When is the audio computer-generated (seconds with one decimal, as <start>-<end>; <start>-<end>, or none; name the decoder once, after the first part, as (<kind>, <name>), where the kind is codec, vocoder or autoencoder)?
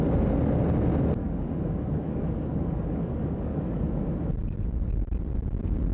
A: 1.2-4.0 (codec, DAC)